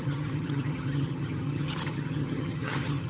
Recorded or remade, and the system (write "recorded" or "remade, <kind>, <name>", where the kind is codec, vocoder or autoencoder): remade, vocoder, HiFi-GAN